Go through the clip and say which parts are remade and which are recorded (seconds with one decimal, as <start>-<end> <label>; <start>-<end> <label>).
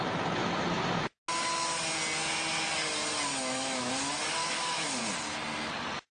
0.0-3.3 recorded; 3.3-3.9 remade; 3.9-4.4 recorded; 4.4-5.0 remade; 5.0-6.2 recorded